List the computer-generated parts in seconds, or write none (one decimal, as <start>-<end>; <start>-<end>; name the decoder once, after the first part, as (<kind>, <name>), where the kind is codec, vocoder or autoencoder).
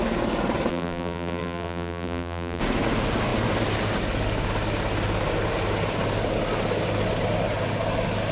0.7-2.6 (vocoder, BigVGAN v2)